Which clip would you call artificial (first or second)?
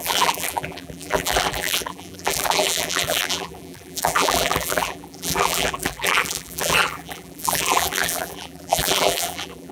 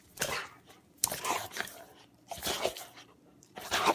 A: first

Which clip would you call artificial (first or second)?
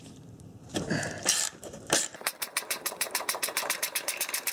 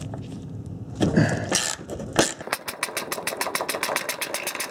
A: first